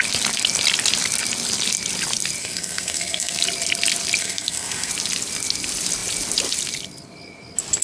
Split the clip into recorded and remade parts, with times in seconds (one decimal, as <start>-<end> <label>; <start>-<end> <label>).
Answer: 0.0-2.4 recorded; 2.4-3.4 remade; 3.4-4.2 recorded; 4.2-4.9 remade; 4.9-7.8 recorded

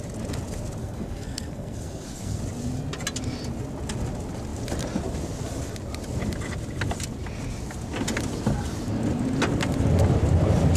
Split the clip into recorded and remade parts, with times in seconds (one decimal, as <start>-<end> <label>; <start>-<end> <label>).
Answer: 0.0-0.8 recorded; 0.8-2.4 remade; 2.4-10.8 recorded

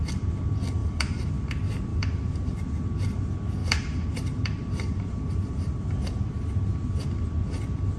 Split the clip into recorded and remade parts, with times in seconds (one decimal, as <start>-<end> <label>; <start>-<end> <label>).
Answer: 0.0-0.8 recorded; 0.8-1.3 remade; 1.3-1.9 recorded; 1.9-2.5 remade; 2.5-3.6 recorded; 3.6-6.3 remade; 6.3-8.0 recorded

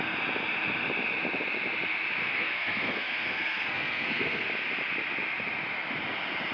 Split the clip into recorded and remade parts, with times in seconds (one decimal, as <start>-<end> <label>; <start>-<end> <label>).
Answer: 0.0-2.2 recorded; 2.2-4.5 remade; 4.5-6.5 recorded

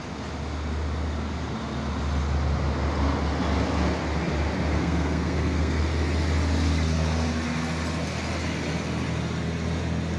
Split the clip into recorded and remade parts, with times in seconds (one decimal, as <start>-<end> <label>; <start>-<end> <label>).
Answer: 0.0-4.7 recorded; 4.7-5.8 remade; 5.8-10.2 recorded